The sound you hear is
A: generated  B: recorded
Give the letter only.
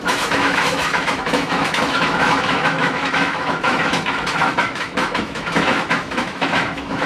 A